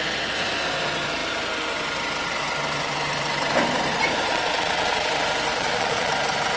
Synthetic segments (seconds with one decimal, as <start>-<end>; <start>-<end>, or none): 4.3-5.1; 5.5-6.1